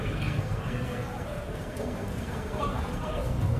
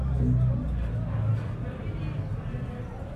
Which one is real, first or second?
second